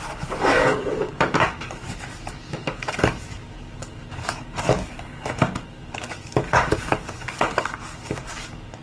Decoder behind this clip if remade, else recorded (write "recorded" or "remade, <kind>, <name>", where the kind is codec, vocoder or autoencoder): remade, codec, DAC